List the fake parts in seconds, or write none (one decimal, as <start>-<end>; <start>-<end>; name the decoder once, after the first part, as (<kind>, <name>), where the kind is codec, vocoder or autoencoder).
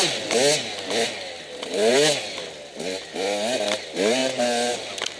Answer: 1.9-3.1 (vocoder, BigVGAN v2); 4.2-4.7